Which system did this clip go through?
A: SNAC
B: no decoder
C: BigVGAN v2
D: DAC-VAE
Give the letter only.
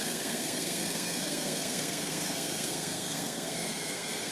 A